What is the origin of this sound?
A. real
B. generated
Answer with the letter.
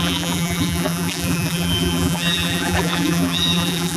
B